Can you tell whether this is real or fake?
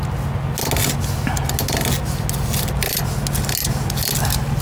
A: real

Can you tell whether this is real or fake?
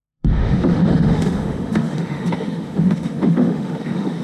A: fake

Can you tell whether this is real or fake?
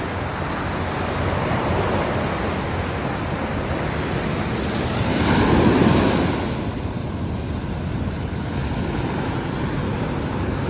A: real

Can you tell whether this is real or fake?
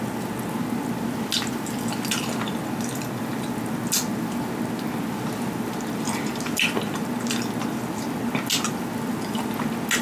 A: real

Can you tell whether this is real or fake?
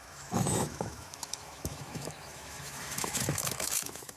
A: fake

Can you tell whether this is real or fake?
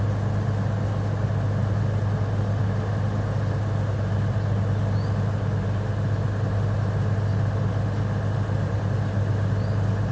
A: real